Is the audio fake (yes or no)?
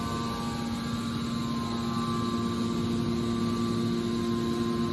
no